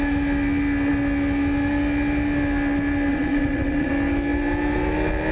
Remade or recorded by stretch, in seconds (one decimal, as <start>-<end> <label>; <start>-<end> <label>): 0.0-3.1 recorded; 3.1-3.9 remade; 3.9-5.3 recorded